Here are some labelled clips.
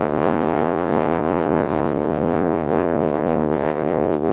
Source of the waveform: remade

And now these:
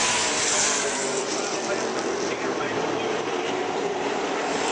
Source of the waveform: remade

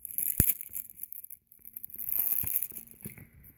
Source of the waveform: recorded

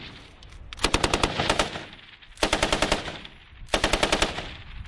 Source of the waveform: recorded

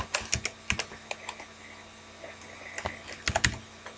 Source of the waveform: recorded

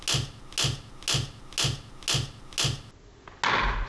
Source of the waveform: recorded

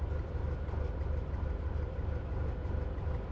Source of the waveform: recorded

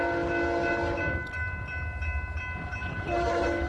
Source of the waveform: recorded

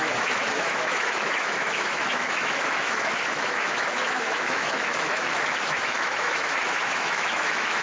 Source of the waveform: remade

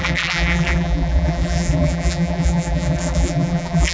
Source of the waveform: remade